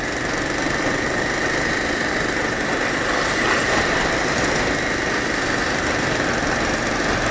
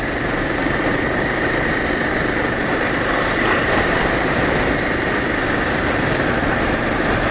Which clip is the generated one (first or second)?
second